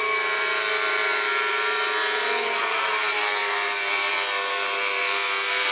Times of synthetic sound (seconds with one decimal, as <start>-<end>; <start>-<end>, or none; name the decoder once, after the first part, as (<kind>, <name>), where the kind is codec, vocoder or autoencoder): 0.0-5.7 (vocoder, BigVGAN v2)